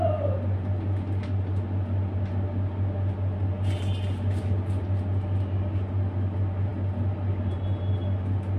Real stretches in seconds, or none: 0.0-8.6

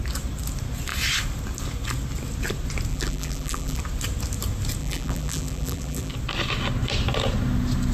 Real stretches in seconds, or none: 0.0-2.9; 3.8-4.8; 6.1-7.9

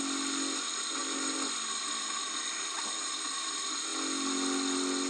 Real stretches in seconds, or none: 0.0-5.1